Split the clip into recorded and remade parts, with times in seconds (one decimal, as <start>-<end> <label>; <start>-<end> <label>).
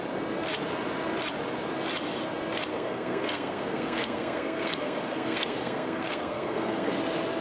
0.0-2.7 recorded; 2.7-6.9 remade; 6.9-7.4 recorded